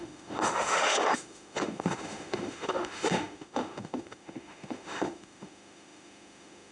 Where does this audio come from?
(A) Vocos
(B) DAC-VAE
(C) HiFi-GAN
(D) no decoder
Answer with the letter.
B